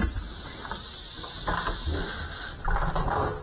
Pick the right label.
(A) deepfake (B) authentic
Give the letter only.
B